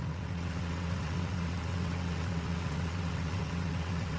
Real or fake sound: fake